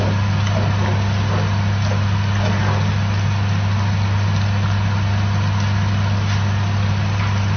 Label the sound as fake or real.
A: real